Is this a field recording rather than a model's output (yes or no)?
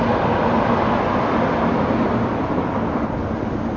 yes